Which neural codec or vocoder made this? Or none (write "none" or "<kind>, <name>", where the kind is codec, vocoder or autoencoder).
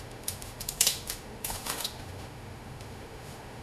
autoencoder, DAC-VAE